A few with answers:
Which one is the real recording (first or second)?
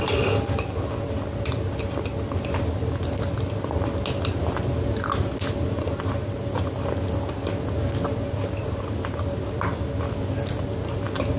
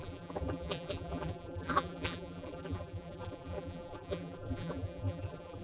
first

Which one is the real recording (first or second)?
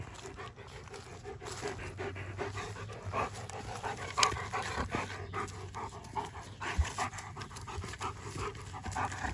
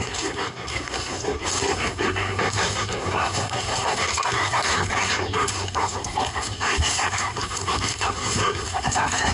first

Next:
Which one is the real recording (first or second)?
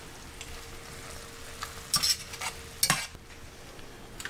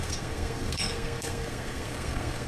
first